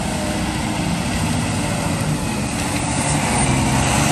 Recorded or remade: recorded